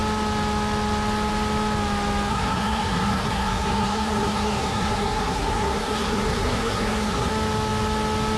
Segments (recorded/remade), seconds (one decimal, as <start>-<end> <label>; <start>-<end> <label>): 0.0-2.3 recorded; 2.3-7.3 remade; 7.3-8.4 recorded